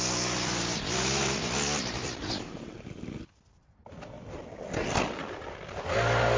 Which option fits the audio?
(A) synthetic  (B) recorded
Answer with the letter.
B